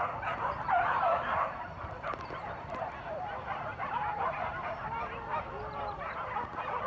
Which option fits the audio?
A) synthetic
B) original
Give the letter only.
B